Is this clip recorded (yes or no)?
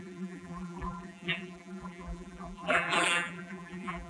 no